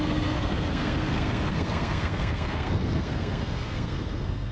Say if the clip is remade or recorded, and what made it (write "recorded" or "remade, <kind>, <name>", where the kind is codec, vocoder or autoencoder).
remade, codec, SNAC